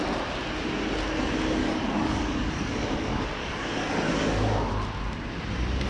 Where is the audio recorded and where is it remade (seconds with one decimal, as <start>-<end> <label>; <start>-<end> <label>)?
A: 0.0-1.6 recorded; 1.6-4.7 remade; 4.7-5.9 recorded